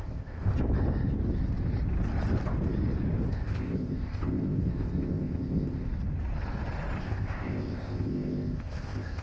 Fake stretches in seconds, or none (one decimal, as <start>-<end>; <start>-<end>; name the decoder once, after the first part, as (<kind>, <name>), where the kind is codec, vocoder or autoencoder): 0.0-0.5 (codec, ZipCodec); 3.3-5.9; 7.0-9.2